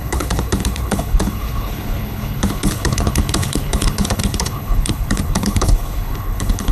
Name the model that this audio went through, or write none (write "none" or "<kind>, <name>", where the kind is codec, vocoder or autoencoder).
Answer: codec, HILCodec